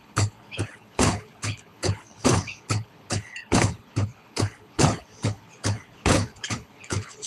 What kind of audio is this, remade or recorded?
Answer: remade